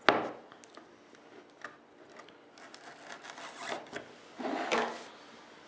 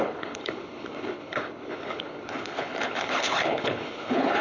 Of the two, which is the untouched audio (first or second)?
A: first